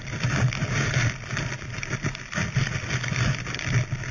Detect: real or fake real